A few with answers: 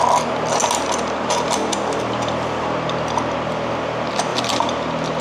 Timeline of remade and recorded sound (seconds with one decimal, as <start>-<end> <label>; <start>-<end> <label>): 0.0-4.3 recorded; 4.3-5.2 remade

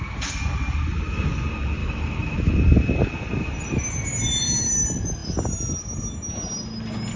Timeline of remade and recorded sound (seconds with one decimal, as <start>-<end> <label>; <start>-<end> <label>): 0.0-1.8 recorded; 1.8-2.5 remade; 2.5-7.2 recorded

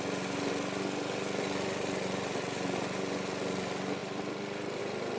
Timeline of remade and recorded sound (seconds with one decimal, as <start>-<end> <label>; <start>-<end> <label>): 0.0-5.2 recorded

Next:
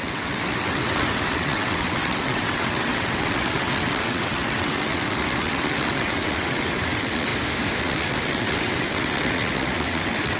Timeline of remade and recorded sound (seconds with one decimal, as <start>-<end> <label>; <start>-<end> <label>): 0.0-7.3 remade; 7.3-7.8 recorded; 7.8-10.4 remade